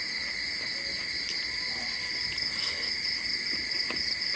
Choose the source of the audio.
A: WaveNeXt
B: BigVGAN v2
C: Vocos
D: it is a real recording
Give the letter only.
D